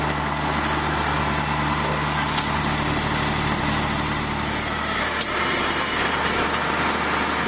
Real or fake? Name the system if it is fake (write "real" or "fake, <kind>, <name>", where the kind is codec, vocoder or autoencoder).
real